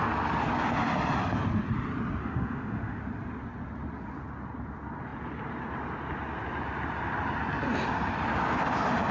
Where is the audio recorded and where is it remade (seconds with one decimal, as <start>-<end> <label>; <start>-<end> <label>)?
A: 0.0-2.2 recorded; 2.2-3.0 remade; 3.0-9.1 recorded